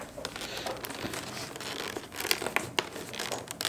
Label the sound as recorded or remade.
recorded